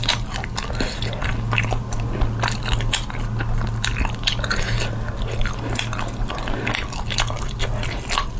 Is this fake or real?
real